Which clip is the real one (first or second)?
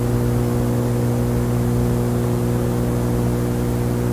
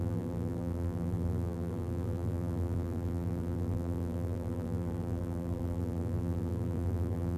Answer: first